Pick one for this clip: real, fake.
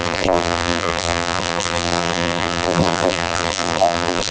fake